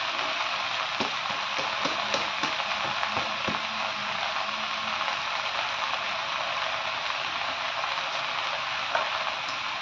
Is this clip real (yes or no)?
yes